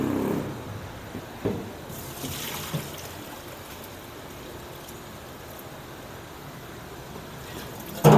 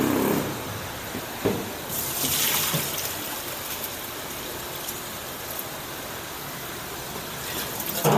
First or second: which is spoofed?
second